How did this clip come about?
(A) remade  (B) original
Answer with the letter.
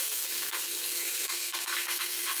A